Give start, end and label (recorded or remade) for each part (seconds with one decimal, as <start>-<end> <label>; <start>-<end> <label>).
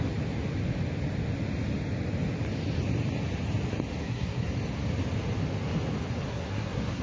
0.0-4.0 recorded; 4.0-4.5 remade; 4.5-6.3 recorded; 6.3-7.0 remade